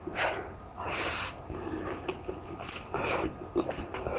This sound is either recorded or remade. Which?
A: recorded